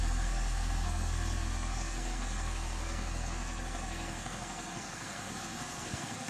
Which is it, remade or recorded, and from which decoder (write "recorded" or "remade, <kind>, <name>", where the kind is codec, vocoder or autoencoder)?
remade, codec, SNAC